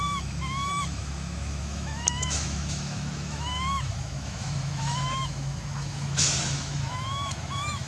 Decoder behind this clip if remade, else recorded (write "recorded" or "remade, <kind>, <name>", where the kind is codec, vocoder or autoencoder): remade, autoencoder, DAC-VAE